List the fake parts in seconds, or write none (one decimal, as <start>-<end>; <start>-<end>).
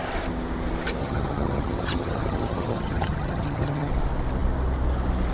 1.0-3.9